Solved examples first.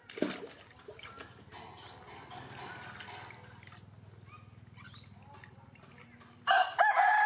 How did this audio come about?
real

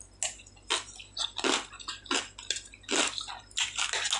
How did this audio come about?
real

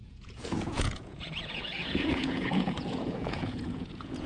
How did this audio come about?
fake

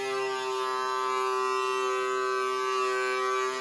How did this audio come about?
real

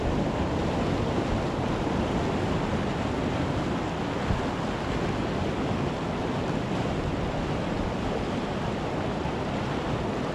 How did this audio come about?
real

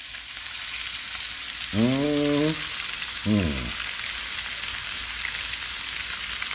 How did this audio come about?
real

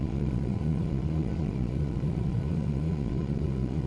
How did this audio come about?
fake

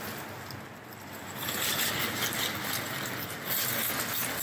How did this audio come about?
real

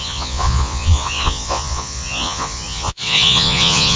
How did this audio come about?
fake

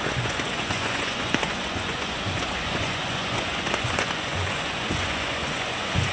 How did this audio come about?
fake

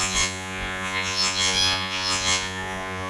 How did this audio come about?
fake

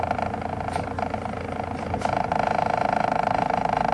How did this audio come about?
real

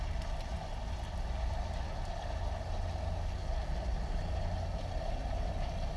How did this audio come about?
real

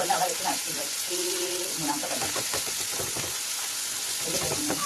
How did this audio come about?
fake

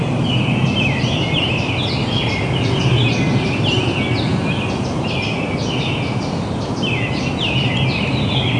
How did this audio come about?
real